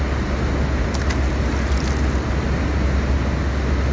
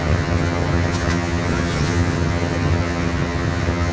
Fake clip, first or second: second